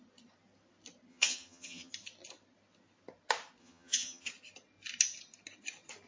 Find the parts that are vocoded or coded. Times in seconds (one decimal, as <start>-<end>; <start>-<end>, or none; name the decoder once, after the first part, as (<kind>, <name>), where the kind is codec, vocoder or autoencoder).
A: 1.1-1.9 (vocoder, HiFi-GAN); 3.6-4.3

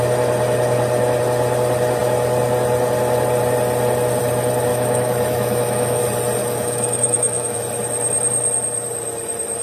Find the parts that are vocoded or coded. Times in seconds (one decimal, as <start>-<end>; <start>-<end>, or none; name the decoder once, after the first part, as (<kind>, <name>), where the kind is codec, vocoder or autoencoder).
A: 4.7-6.0 (autoencoder, DAC-VAE); 6.4-7.6

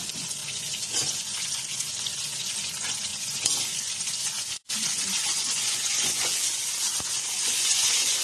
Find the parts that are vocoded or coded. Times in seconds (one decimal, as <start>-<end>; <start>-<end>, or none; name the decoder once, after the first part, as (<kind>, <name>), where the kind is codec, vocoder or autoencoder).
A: 0.0-8.2 (vocoder, Vocos)